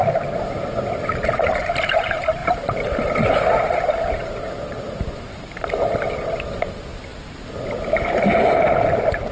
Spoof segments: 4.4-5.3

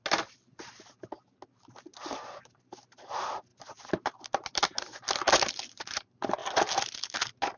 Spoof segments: none

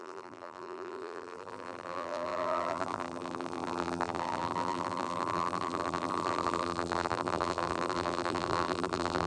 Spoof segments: 0.0-9.3

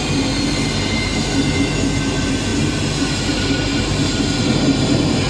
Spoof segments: 3.7-4.2

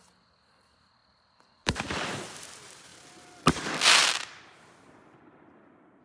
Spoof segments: 1.0-2.5; 2.9-6.0

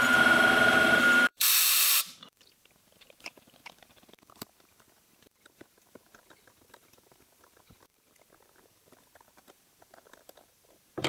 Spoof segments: 0.0-11.1